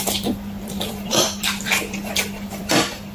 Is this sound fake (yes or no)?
yes